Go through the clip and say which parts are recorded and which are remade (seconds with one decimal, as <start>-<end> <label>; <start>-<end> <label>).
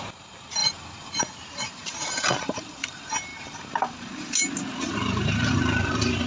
0.0-0.6 remade; 0.6-1.2 recorded; 1.2-3.3 remade; 3.3-4.9 recorded; 4.9-6.3 remade